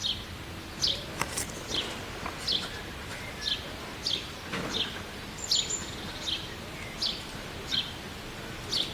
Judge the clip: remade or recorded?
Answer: recorded